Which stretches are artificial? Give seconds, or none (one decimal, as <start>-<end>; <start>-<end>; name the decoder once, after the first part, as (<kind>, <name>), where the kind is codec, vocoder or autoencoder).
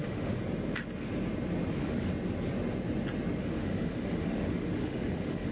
0.0-0.4 (autoencoder, DAC-VAE); 1.7-2.1; 3.4-5.5